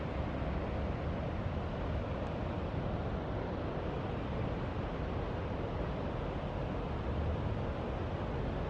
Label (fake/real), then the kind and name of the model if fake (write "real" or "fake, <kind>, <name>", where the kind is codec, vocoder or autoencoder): real